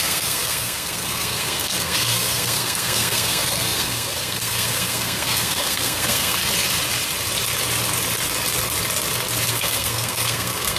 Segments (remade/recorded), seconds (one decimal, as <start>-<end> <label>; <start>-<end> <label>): 0.0-6.4 remade; 6.4-9.5 recorded; 9.5-10.8 remade